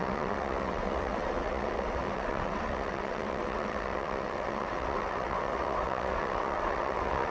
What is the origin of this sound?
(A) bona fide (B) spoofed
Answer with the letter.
B